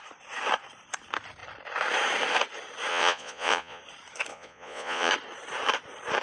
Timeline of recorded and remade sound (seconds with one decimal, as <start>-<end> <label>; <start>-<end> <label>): 0.0-2.9 recorded; 2.9-3.8 remade; 3.8-4.3 recorded; 4.3-5.1 remade; 5.1-6.2 recorded